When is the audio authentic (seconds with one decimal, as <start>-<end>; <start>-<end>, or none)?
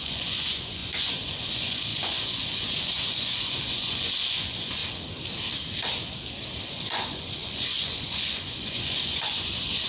4.8-6.7